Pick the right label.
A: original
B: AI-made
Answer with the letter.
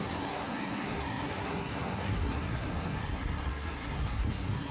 B